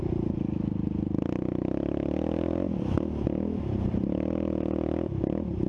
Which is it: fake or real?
real